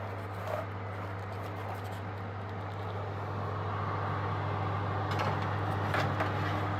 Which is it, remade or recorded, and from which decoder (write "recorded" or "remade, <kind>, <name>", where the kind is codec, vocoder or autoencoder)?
recorded